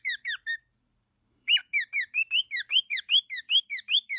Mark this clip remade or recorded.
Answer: remade